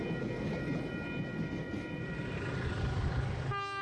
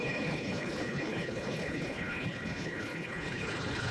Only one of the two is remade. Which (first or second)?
second